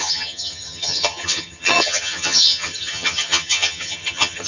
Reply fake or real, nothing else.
fake